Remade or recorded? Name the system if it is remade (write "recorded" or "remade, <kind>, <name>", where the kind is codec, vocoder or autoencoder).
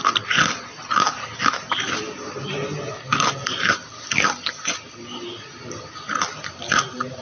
recorded